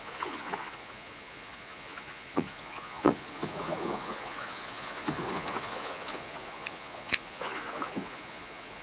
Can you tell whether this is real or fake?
fake